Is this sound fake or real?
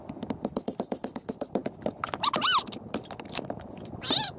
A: real